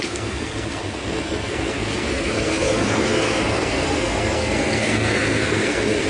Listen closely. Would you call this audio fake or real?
fake